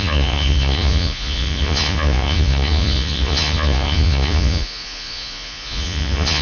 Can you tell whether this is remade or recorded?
remade